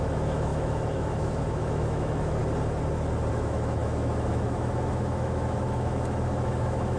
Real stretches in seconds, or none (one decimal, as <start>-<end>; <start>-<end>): 2.4-3.3